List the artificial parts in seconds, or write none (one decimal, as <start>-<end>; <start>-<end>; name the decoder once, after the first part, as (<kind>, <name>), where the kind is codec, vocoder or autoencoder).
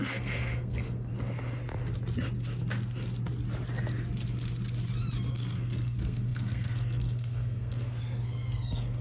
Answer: 0.0-1.1 (codec, SNAC); 5.3-9.0